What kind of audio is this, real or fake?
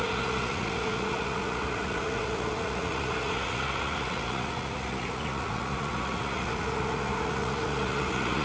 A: fake